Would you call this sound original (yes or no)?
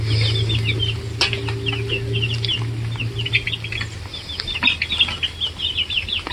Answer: yes